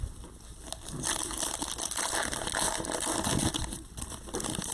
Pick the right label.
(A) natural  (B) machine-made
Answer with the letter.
A